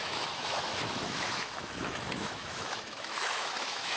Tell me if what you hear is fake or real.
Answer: fake